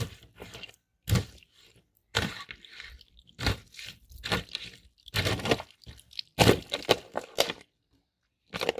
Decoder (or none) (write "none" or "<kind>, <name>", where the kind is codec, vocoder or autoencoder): vocoder, BigVGAN v2